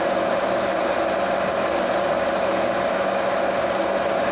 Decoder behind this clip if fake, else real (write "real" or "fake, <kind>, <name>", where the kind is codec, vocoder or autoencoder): real